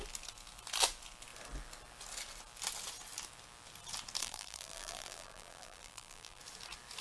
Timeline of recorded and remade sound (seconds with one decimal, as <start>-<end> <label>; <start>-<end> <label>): 0.0-4.2 recorded; 4.2-6.4 remade; 6.4-7.0 recorded